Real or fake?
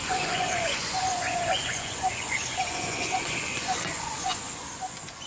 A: fake